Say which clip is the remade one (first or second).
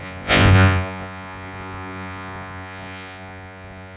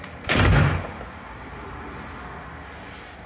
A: first